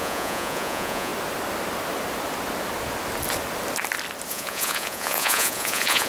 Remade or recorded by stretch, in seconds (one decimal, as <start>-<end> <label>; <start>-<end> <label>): 0.0-1.1 remade; 1.1-4.3 recorded; 4.3-6.1 remade